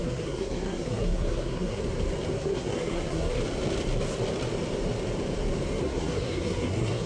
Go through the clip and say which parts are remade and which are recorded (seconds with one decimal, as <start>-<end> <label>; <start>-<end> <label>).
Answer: 0.0-1.8 remade; 1.8-2.4 recorded; 2.4-3.4 remade; 3.4-5.8 recorded; 5.8-7.1 remade

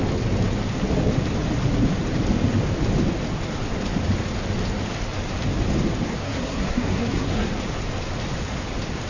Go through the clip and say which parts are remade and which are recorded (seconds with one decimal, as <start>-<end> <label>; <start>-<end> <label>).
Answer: 0.0-6.1 recorded; 6.1-7.5 remade; 7.5-9.1 recorded

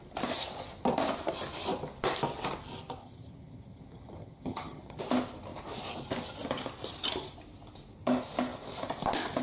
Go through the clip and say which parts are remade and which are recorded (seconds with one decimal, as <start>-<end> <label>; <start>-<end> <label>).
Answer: 0.0-3.0 recorded; 3.0-5.0 remade; 5.0-9.4 recorded